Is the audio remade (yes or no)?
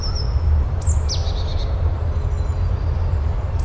no